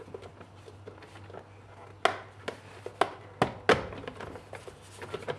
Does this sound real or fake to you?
real